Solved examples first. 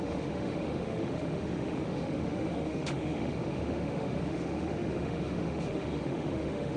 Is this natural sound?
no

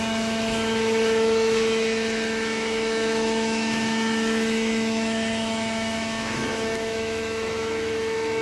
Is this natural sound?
no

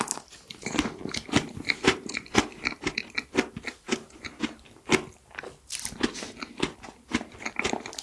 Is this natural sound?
yes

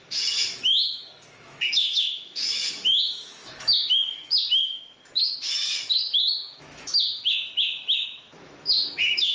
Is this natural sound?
no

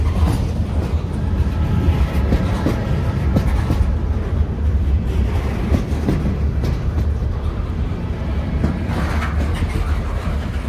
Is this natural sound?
yes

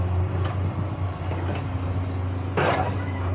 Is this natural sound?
yes